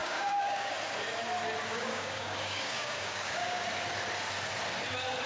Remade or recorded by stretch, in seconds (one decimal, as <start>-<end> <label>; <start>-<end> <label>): 0.0-0.7 remade; 0.7-1.7 recorded; 1.7-3.6 remade; 3.6-5.3 recorded